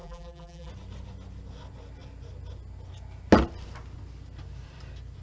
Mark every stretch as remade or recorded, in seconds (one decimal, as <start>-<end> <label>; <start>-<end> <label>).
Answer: 0.0-0.7 remade; 0.7-5.2 recorded